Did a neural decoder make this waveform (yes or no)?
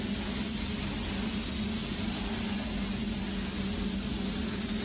no